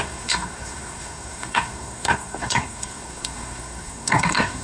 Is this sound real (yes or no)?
no